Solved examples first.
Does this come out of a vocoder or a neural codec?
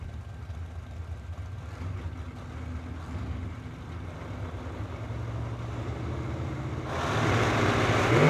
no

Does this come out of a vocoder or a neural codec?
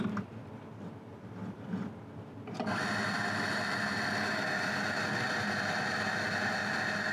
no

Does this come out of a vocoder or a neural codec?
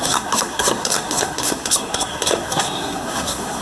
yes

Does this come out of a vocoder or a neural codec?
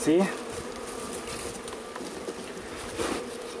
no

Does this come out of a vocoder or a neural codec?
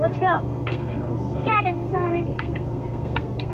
yes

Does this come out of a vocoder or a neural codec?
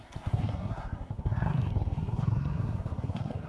yes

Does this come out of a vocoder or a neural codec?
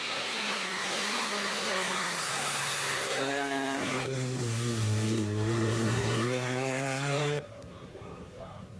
yes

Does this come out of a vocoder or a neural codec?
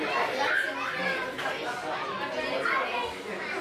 no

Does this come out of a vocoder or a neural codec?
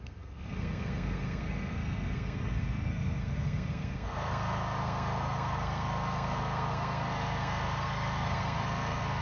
yes